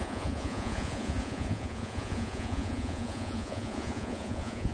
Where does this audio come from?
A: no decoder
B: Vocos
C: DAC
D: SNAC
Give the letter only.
B